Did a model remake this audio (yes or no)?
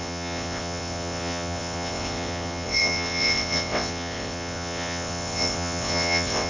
yes